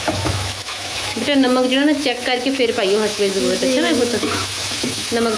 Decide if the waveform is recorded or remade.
remade